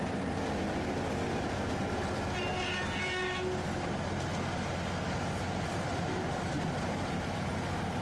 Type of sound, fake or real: real